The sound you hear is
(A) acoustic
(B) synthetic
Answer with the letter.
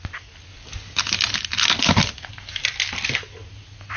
A